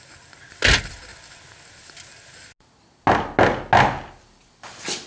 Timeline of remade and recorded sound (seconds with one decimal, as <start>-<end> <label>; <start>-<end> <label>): 0.0-5.1 recorded